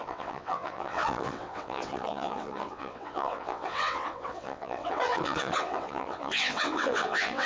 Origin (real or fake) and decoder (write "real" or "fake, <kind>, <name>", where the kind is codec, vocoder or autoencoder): fake, vocoder, WaveNeXt